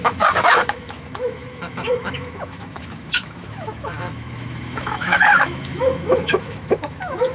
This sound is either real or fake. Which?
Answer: fake